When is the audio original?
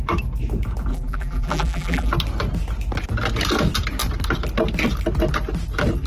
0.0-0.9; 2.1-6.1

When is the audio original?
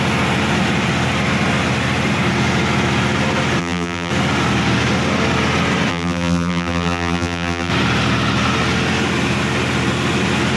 0.0-3.6; 4.1-5.9; 7.7-10.6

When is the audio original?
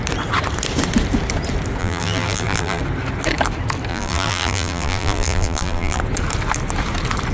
0.0-1.8; 2.8-3.9; 6.0-7.3